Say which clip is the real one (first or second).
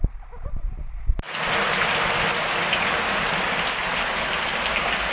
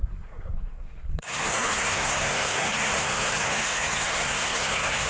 first